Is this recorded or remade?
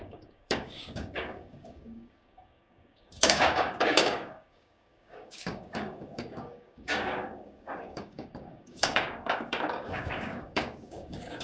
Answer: remade